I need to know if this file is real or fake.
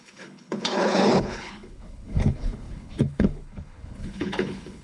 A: fake